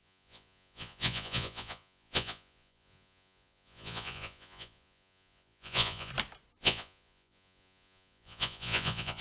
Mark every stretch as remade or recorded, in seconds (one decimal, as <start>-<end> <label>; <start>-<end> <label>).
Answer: 0.0-6.1 remade; 6.1-6.6 recorded; 6.6-9.2 remade